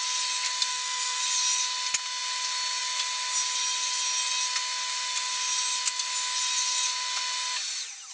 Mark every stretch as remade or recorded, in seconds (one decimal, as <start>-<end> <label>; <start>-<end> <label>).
0.0-0.7 recorded; 0.7-1.2 remade; 1.2-8.1 recorded